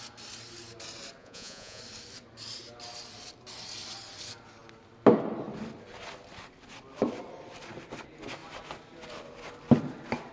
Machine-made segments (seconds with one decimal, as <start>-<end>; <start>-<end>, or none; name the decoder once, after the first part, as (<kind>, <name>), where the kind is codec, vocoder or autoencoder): 1.2-1.8 (vocoder, Vocos)